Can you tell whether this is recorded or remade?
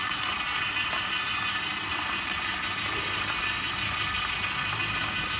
recorded